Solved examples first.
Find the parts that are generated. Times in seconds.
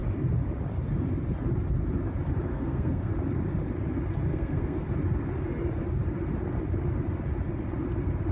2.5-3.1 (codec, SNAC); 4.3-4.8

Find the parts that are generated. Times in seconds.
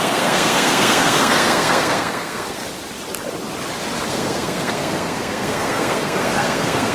0.0-2.6 (codec, SNAC); 4.1-6.9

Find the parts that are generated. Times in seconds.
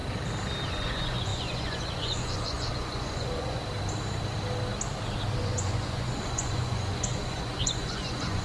0.7-3.6 (vocoder, Vocos); 5.4-8.4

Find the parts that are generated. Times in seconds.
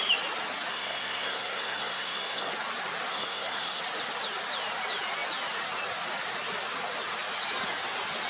0.7-2.5 (codec, SNAC); 3.1-3.8